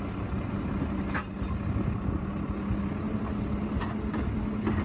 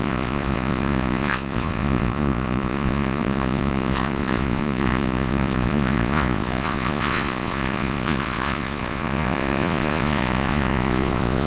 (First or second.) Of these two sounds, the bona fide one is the first